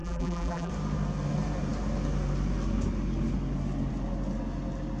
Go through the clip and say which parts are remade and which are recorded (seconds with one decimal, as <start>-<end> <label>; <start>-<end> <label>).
0.0-0.7 remade; 0.7-5.0 recorded